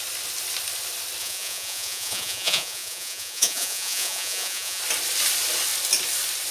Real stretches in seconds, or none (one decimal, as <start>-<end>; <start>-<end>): 0.0-1.2; 4.8-6.5